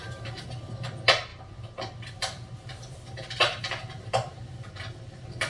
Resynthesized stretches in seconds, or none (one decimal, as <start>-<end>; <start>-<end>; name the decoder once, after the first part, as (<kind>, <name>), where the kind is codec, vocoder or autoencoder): 0.0-0.9 (vocoder, BigVGAN v2); 1.3-4.6